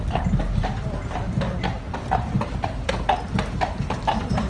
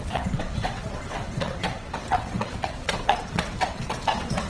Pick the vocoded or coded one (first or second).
second